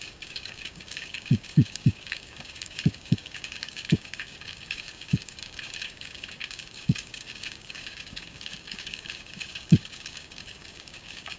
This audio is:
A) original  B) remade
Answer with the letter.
B